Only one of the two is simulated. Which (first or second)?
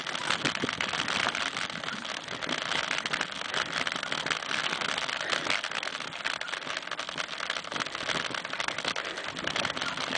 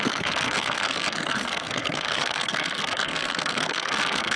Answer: second